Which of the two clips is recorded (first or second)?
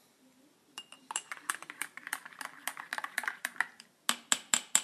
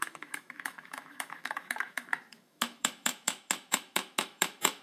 first